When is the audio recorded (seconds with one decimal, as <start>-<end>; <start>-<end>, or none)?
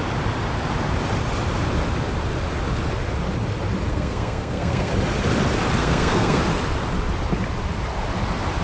0.0-3.9; 4.9-5.8; 6.4-8.6